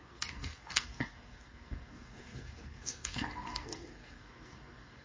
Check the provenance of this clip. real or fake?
fake